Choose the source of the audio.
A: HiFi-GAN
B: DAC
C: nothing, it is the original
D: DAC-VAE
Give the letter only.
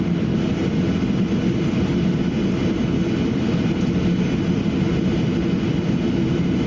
C